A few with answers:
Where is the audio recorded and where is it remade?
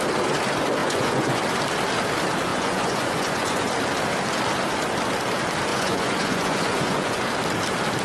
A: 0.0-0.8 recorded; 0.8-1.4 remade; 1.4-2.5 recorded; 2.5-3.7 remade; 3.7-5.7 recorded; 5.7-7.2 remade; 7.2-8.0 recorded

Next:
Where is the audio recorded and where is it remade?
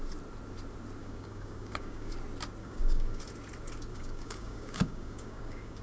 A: 0.0-1.0 recorded; 1.0-2.1 remade; 2.1-2.6 recorded; 2.6-3.2 remade; 3.2-3.9 recorded; 3.9-5.8 remade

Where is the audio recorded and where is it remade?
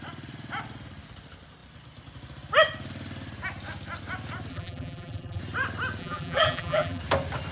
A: 0.0-4.5 recorded; 4.5-5.4 remade; 5.4-6.0 recorded; 6.0-7.0 remade; 7.0-7.5 recorded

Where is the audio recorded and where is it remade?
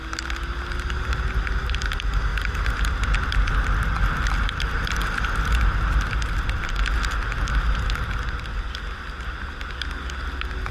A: 0.0-10.7 recorded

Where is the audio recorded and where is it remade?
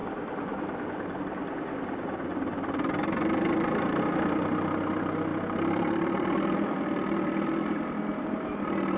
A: 0.0-1.2 remade; 1.2-2.3 recorded; 2.3-4.0 remade; 4.0-5.3 recorded; 5.3-8.2 remade; 8.2-9.0 recorded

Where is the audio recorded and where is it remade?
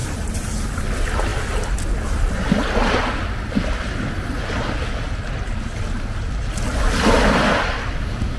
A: 0.0-8.4 recorded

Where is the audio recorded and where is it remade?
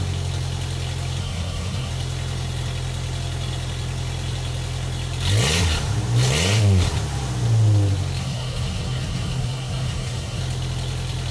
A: 0.0-1.2 recorded; 1.2-1.9 remade; 1.9-8.2 recorded; 8.2-10.4 remade; 10.4-11.3 recorded